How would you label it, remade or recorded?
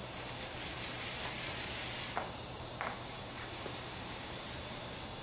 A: remade